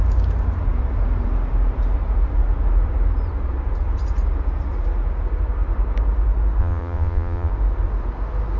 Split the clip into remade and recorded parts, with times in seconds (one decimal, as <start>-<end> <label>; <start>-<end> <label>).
0.0-6.6 recorded; 6.6-7.5 remade; 7.5-8.6 recorded